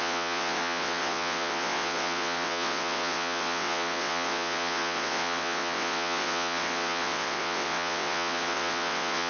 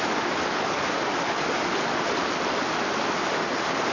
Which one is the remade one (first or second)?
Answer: first